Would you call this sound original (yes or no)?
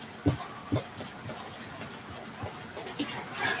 yes